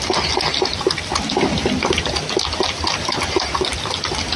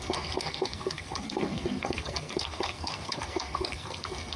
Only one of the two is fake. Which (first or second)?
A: second